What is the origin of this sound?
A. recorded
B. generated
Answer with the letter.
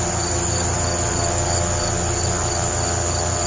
A